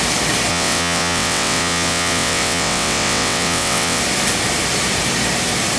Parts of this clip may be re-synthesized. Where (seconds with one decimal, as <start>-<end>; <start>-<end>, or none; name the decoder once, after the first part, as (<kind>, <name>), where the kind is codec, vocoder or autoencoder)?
0.5-4.0 (vocoder, WaveNeXt)